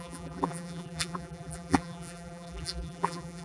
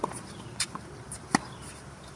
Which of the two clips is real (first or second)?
second